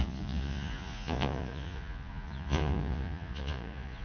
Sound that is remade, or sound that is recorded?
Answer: remade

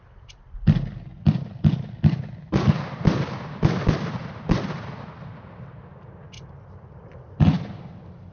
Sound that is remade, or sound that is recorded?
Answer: recorded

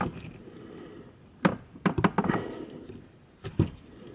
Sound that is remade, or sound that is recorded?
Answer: recorded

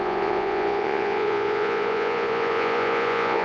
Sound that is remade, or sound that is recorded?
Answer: remade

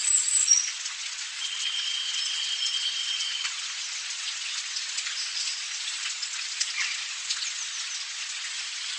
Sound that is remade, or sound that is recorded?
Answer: remade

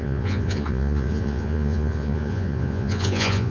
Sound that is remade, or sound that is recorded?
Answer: remade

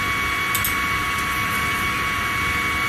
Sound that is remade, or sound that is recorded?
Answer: recorded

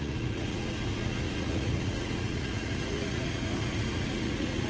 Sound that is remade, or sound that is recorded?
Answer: remade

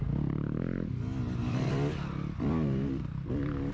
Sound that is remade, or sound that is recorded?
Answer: recorded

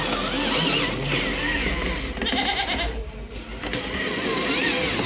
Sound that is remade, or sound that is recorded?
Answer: recorded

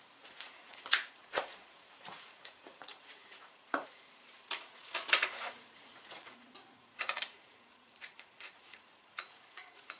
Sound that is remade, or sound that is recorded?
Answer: remade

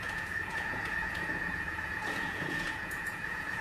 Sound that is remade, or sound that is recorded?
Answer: remade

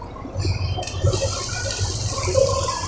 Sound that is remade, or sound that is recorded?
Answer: recorded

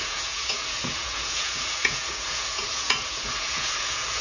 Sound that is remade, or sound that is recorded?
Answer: remade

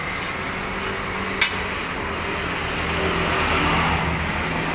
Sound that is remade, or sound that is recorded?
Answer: recorded